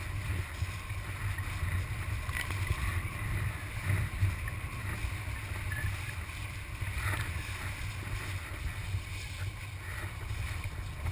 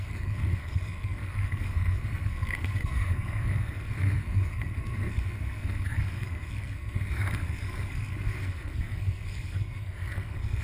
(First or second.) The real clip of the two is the first